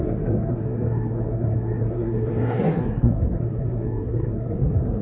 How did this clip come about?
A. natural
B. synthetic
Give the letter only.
B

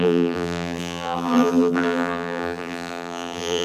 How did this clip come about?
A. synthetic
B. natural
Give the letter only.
A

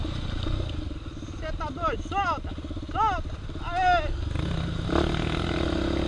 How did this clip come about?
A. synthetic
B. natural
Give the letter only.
B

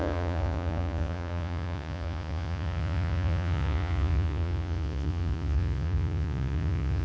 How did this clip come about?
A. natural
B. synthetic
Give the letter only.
B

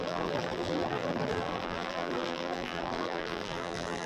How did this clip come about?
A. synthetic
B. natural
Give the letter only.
A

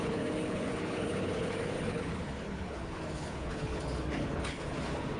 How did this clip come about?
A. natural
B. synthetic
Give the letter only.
B